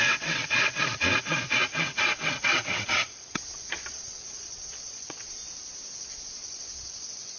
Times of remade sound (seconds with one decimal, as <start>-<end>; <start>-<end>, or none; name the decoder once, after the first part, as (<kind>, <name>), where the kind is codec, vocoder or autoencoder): 0.0-0.4 (vocoder, WaveNeXt); 1.6-5.4; 6.0-7.4